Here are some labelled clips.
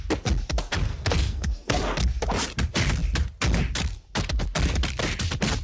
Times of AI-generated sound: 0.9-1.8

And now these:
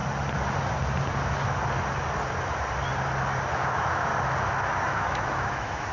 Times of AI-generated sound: 3.5-4.1; 4.9-5.9

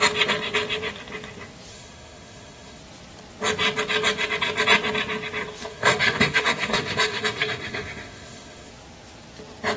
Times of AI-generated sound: 1.7-2.8; 5.7-8.7

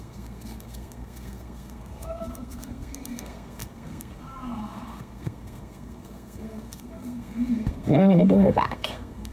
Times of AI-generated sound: 0.0-9.3

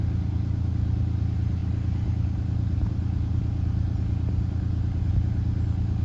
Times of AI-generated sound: none

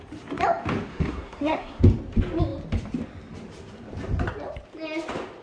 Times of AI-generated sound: 0.9-1.8